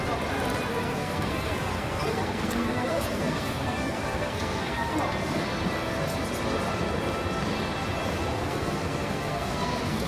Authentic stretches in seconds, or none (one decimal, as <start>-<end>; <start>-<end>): 0.0-0.7; 5.0-8.3